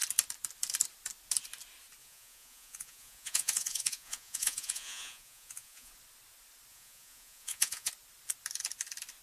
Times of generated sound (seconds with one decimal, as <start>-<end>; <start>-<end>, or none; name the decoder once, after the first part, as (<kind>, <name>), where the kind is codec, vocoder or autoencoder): 2.0-5.9 (vocoder, Vocos); 6.7-7.9